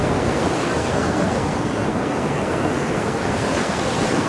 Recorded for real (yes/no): no